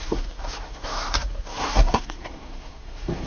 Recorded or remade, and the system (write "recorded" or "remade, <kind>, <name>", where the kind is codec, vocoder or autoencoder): remade, codec, SNAC